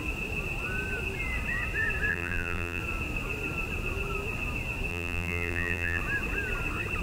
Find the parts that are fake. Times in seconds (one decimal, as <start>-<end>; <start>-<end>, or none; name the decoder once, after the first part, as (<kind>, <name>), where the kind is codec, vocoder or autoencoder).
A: 2.1-2.8 (vocoder, BigVGAN v2); 4.9-6.0

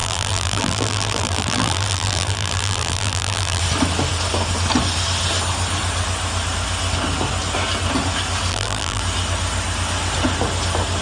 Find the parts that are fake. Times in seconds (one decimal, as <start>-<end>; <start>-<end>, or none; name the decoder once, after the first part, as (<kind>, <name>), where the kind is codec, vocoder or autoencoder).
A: 0.0-3.6 (vocoder, BigVGAN v2); 8.5-9.0

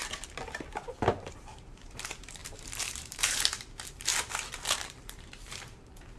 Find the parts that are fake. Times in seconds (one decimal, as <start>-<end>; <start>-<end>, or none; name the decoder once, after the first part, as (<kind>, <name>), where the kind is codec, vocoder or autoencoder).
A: 1.4-4.1 (vocoder, BigVGAN v2); 4.7-6.2

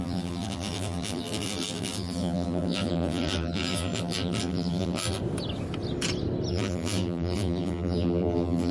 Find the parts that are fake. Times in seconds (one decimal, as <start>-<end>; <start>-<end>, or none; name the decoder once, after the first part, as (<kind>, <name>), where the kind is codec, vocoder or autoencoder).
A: 0.0-5.2 (vocoder, BigVGAN v2); 6.5-8.7